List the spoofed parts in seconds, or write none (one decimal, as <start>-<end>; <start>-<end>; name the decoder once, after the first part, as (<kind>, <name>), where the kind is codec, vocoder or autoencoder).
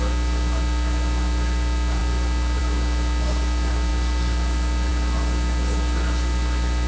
none